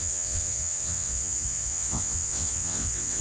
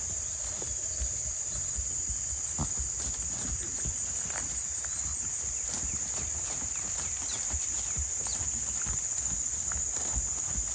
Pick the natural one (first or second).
second